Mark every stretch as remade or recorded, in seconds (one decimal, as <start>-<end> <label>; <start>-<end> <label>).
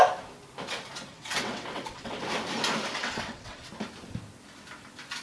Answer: 0.0-1.1 recorded; 1.1-2.2 remade; 2.2-3.0 recorded; 3.0-3.7 remade; 3.7-5.2 recorded